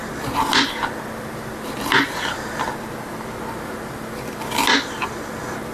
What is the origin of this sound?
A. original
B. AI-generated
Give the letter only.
A